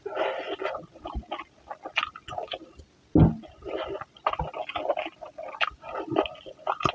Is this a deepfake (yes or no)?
no